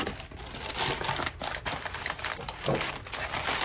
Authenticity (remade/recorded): recorded